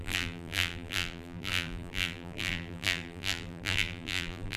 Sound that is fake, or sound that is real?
fake